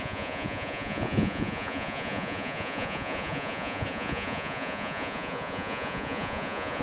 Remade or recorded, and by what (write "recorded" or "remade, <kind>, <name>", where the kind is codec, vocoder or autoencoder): remade, vocoder, Vocos